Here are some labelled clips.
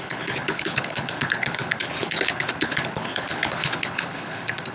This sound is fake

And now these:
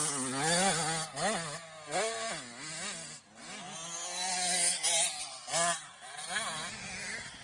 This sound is real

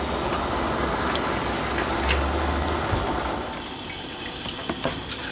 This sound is real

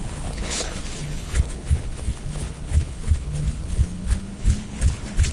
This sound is fake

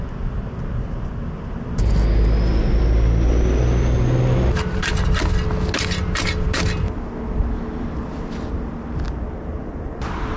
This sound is real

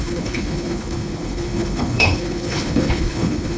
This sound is fake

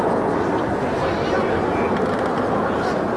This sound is real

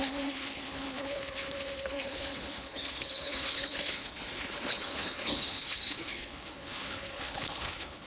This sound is fake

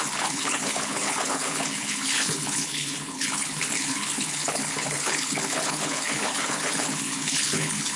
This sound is fake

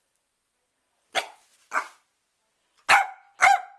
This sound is real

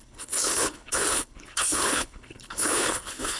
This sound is fake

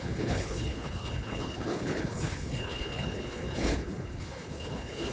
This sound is fake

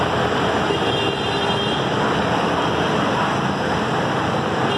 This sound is real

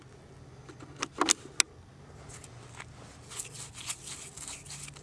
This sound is real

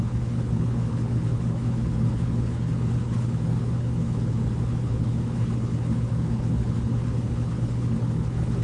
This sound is fake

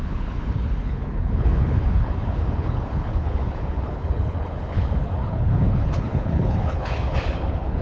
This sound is fake